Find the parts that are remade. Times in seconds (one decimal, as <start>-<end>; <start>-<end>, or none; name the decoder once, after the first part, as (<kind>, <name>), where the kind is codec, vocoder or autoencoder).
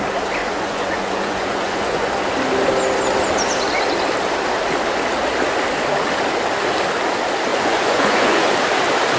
0.4-2.1 (vocoder, Vocos); 7.5-8.5